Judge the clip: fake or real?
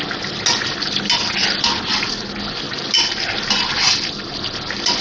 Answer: real